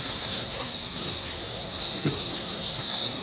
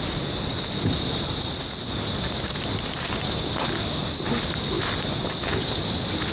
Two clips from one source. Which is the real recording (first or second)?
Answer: second